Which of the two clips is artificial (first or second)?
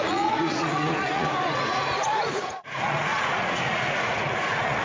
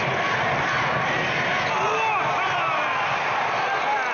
first